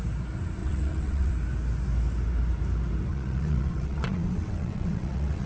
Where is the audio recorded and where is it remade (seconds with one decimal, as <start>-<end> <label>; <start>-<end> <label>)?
0.0-0.6 recorded; 0.6-1.3 remade; 1.3-3.1 recorded; 3.1-5.5 remade